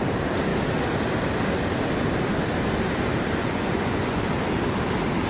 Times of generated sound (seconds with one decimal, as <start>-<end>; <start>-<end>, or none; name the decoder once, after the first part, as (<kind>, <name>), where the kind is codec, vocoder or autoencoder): 3.4-4.2 (vocoder, Vocos)